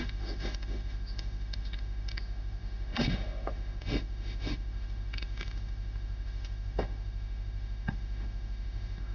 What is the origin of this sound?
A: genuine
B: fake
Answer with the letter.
B